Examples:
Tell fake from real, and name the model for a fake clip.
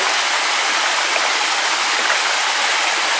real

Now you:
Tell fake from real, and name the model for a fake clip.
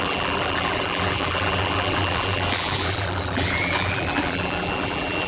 fake, vocoder, BigVGAN v2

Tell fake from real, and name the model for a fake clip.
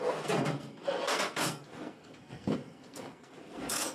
fake, codec, SNAC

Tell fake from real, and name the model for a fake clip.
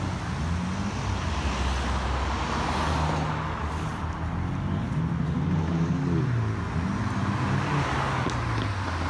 real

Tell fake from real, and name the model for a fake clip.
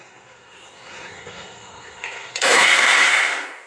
fake, codec, SNAC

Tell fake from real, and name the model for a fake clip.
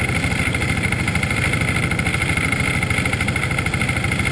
real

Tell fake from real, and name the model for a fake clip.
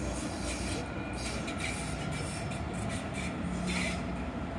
real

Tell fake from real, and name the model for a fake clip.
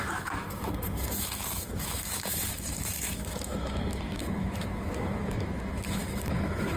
fake, autoencoder, DAC-VAE